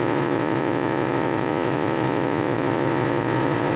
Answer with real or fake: fake